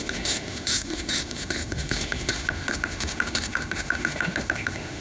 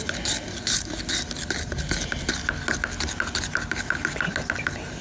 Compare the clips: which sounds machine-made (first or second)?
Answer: first